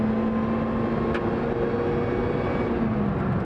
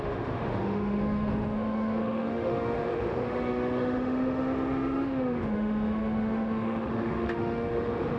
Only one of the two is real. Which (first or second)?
first